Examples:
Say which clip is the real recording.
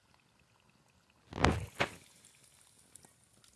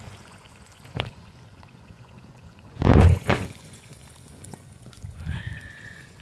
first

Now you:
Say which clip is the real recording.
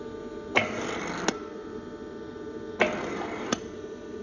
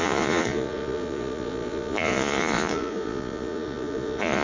first